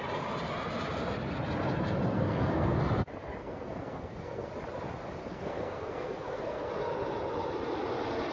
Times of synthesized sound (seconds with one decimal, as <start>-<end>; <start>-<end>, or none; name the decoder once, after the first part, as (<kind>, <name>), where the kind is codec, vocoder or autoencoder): 2.1-2.8 (codec, SNAC); 3.4-4.5; 5.2-6.7